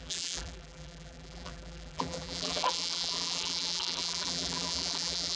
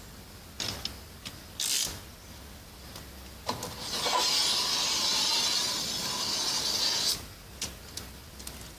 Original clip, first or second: second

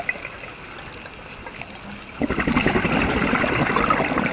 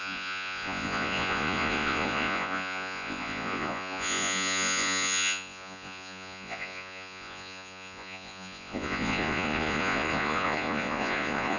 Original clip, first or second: first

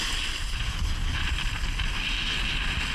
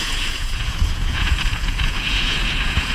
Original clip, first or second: first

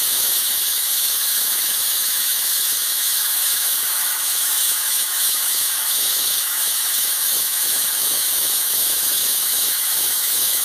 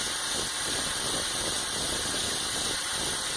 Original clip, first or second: second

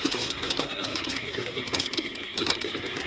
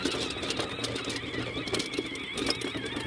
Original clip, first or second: second